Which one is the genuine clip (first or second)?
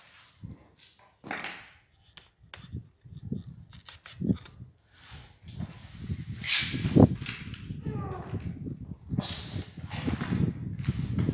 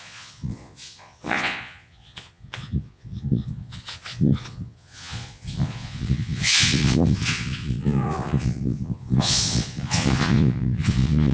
first